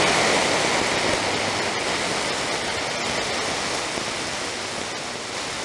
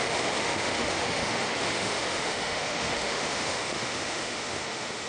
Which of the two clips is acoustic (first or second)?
first